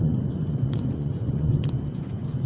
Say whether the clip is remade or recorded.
remade